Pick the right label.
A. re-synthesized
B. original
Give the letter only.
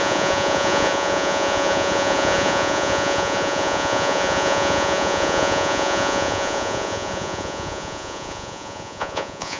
A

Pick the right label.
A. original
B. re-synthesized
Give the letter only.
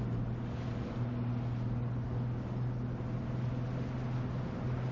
A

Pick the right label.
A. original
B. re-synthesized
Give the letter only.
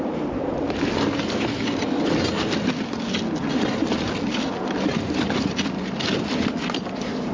A